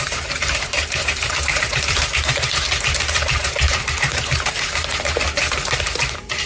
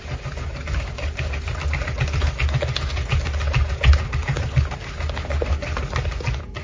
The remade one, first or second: first